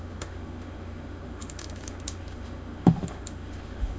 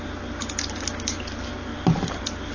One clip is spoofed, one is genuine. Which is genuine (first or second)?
second